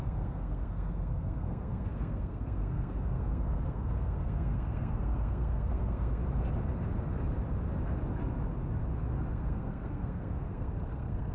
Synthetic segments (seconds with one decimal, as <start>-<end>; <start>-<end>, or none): 0.0-6.2; 9.3-11.3